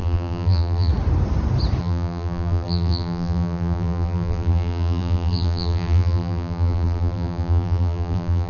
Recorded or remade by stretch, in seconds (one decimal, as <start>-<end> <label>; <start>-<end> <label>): 0.0-0.9 remade; 0.9-1.8 recorded; 1.8-8.5 remade

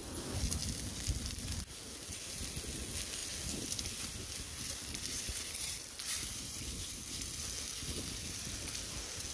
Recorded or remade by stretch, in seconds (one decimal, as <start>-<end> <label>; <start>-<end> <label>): 0.0-0.5 remade; 0.5-3.2 recorded; 3.2-7.2 remade; 7.2-9.3 recorded

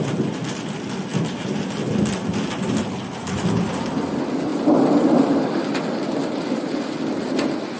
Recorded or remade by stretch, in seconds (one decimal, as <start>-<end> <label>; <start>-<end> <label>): 0.0-7.8 recorded